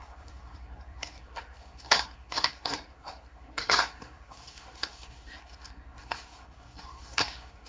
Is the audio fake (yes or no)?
yes